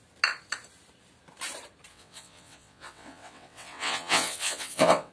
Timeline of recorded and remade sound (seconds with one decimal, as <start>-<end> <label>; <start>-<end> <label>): 0.0-1.9 recorded; 1.9-5.1 remade